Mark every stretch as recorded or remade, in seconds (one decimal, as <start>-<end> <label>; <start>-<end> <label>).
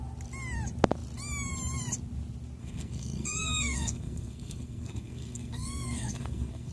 0.0-2.6 recorded; 2.6-6.7 remade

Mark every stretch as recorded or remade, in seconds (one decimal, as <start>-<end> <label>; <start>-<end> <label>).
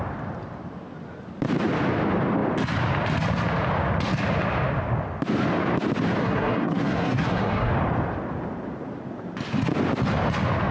0.0-6.2 recorded; 6.2-7.7 remade; 7.7-10.7 recorded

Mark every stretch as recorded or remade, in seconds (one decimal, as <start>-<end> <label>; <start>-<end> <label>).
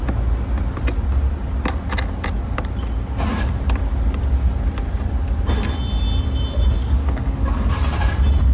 0.0-6.8 recorded; 6.8-7.7 remade; 7.7-8.5 recorded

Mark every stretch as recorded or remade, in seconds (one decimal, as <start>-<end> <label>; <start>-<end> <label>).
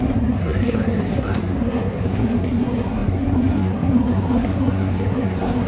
0.0-5.7 remade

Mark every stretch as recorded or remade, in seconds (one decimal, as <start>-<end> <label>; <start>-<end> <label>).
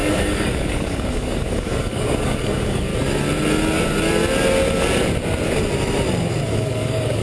0.0-2.9 remade; 2.9-6.4 recorded; 6.4-7.2 remade